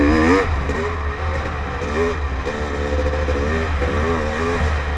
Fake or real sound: real